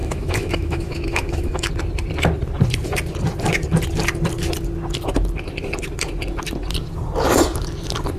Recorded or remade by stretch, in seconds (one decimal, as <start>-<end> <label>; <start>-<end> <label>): 0.0-1.7 remade; 1.7-8.2 recorded